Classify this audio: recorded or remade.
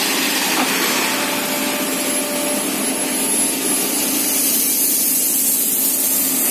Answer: recorded